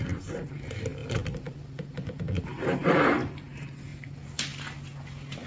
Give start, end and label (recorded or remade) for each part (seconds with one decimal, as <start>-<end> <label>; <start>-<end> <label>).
0.0-5.5 recorded